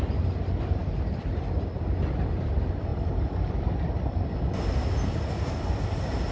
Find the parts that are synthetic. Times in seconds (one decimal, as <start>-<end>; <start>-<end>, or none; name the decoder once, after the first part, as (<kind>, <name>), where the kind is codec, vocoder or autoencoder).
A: none